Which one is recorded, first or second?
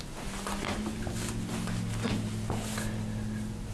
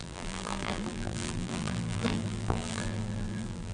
first